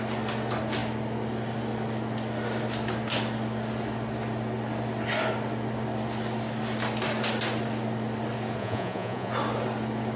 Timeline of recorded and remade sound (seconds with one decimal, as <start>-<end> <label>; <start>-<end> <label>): 0.0-8.6 recorded; 8.6-9.3 remade; 9.3-10.2 recorded